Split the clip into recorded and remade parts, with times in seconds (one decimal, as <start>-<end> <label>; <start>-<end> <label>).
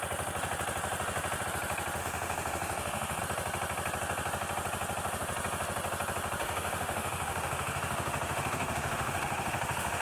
0.0-2.0 recorded; 2.0-3.2 remade; 3.2-6.4 recorded; 6.4-10.0 remade